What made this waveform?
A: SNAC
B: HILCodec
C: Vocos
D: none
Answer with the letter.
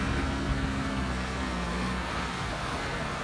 A